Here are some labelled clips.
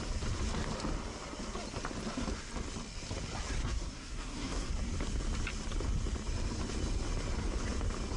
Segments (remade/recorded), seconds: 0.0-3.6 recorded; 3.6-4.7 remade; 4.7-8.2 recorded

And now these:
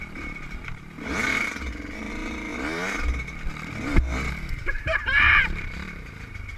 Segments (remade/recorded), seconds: 0.0-2.5 remade; 2.5-4.5 recorded; 4.5-6.6 remade

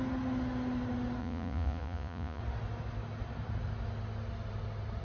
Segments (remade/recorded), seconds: 0.0-1.2 recorded; 1.2-2.4 remade; 2.4-5.0 recorded

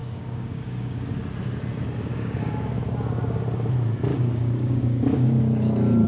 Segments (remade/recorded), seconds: 0.0-1.1 remade; 1.1-2.1 recorded; 2.1-2.8 remade; 2.8-4.1 recorded; 4.1-5.4 remade; 5.4-6.1 recorded

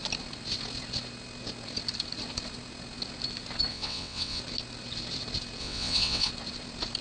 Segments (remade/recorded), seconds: 0.0-3.7 recorded; 3.7-4.4 remade; 4.4-5.6 recorded; 5.6-6.3 remade; 6.3-7.0 recorded

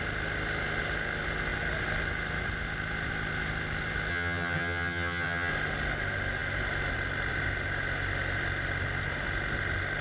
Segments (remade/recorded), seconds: 0.0-4.1 recorded; 4.1-5.5 remade; 5.5-10.0 recorded

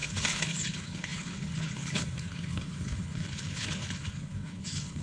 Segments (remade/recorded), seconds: 0.0-5.0 remade

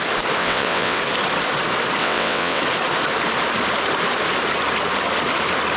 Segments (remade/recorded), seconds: 0.0-0.4 recorded; 0.4-1.0 remade; 1.0-2.0 recorded; 2.0-2.6 remade; 2.6-5.8 recorded